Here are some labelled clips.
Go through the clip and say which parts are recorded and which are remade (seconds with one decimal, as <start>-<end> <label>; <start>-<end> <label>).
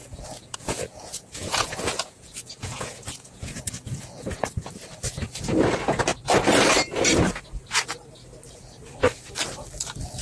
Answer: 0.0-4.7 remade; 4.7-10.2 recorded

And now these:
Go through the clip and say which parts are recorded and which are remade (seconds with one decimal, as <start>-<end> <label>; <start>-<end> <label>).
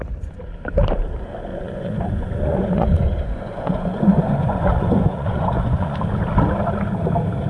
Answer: 0.0-1.5 recorded; 1.5-6.0 remade; 6.0-7.5 recorded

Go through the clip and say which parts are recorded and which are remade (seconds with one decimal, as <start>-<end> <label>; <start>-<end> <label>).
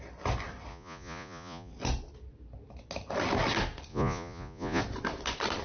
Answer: 0.0-0.7 recorded; 0.7-1.7 remade; 1.7-3.9 recorded; 3.9-4.8 remade; 4.8-5.6 recorded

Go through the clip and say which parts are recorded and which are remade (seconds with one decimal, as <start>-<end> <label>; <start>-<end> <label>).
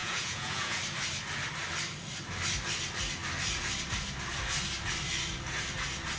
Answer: 0.0-0.8 remade; 0.8-6.2 recorded